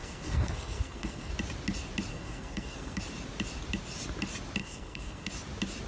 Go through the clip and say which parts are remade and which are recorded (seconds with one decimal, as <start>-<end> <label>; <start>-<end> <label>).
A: 0.0-1.3 remade; 1.3-2.1 recorded; 2.1-3.0 remade; 3.0-4.6 recorded; 4.6-5.3 remade; 5.3-5.9 recorded